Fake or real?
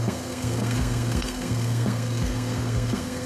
fake